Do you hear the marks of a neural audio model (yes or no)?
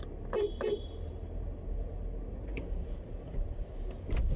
no